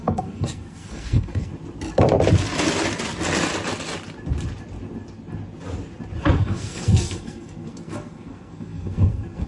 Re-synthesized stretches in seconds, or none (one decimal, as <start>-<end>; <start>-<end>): 0.0-1.5; 6.2-9.5